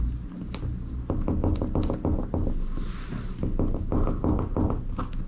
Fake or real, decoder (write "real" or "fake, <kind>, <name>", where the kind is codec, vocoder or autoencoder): real